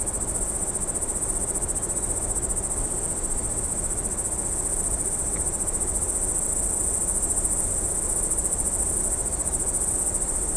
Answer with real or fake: real